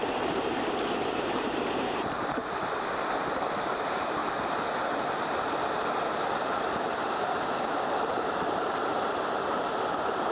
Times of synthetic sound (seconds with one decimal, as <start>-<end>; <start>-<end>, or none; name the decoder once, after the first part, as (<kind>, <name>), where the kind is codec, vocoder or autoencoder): 0.0-2.4 (vocoder, BigVGAN v2); 3.0-4.2; 6.0-10.3